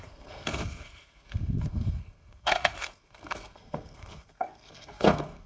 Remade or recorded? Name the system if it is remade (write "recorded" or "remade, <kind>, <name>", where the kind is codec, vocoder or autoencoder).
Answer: remade, codec, SNAC